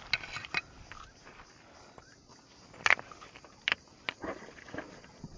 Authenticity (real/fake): real